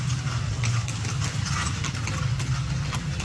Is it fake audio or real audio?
real